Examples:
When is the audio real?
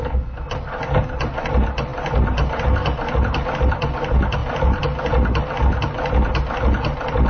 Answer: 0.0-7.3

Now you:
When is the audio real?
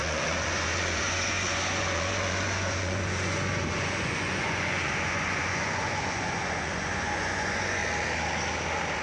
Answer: 7.8-9.0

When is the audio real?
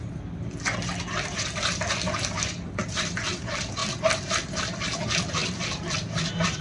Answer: 0.0-3.8; 4.4-5.4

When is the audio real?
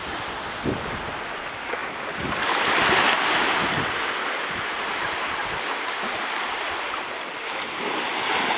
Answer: 0.0-8.6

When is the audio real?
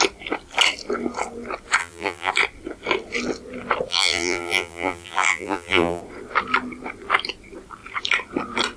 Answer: 0.0-1.8; 2.3-3.9; 6.0-8.8